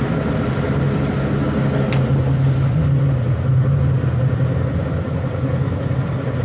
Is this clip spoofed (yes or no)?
no